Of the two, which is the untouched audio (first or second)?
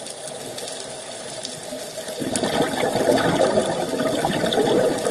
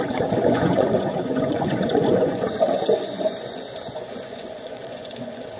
first